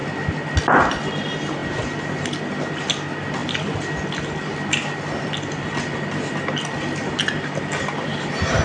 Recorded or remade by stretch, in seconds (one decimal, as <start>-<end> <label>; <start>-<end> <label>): 0.0-8.6 recorded